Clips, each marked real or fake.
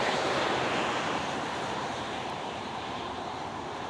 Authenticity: fake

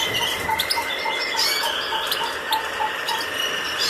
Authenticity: fake